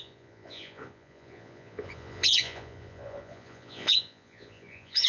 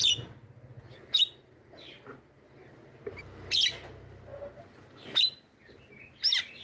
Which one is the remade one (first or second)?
first